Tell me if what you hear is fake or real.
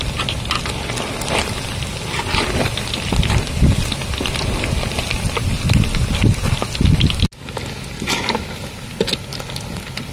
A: real